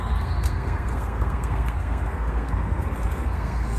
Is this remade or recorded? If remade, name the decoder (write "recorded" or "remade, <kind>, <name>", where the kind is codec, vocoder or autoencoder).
remade, codec, SNAC